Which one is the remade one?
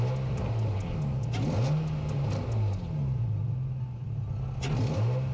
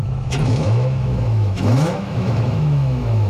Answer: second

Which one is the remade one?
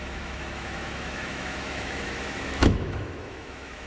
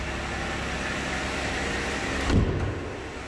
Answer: first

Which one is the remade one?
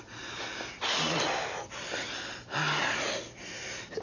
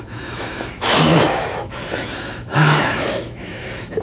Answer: second